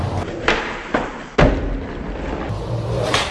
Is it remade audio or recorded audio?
recorded